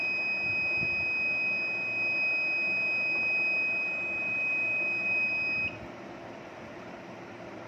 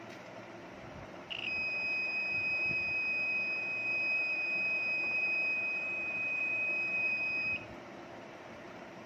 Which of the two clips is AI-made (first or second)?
second